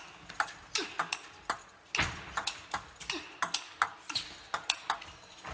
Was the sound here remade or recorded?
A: recorded